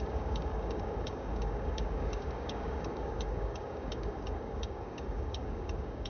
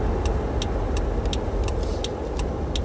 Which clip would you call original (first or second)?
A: second